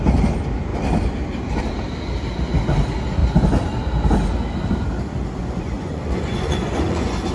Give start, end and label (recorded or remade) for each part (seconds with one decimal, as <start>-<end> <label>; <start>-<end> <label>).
0.0-5.4 recorded; 5.4-7.3 remade